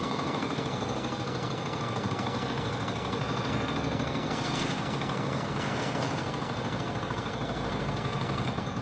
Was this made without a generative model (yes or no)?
no